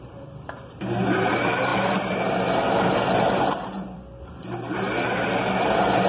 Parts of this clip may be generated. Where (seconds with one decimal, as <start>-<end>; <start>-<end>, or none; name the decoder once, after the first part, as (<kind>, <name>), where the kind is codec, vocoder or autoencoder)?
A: none